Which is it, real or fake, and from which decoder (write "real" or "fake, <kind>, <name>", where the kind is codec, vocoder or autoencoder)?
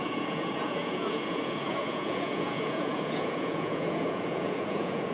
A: fake, vocoder, Vocos